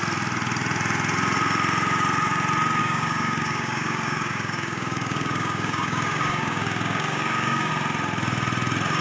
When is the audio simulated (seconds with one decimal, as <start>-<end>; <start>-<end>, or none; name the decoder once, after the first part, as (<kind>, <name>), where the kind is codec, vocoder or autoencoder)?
2.8-7.7 (codec, DAC)